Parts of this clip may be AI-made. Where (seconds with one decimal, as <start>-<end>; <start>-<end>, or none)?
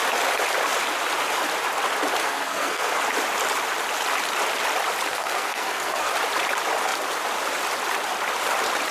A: 2.2-3.0; 5.1-6.1